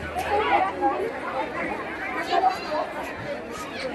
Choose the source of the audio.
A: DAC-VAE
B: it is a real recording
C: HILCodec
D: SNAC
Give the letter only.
B